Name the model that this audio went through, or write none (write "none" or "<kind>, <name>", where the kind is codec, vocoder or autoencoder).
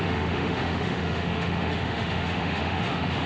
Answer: autoencoder, DAC-VAE